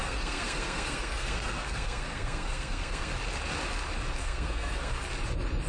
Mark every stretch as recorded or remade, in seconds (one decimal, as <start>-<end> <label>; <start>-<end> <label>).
0.0-3.1 remade; 3.1-4.2 recorded; 4.2-4.9 remade; 4.9-5.7 recorded